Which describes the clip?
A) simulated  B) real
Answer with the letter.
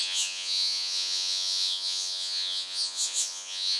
A